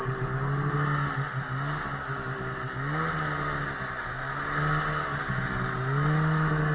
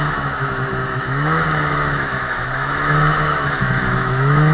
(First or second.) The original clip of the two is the first